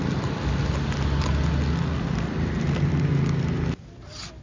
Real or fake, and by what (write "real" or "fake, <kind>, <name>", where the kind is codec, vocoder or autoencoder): real